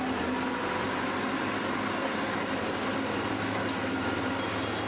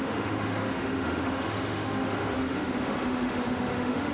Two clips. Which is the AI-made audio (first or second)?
second